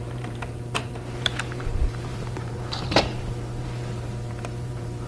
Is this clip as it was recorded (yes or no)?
no